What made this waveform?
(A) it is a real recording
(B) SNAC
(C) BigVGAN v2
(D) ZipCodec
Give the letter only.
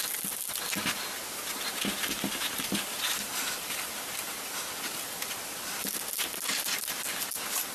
A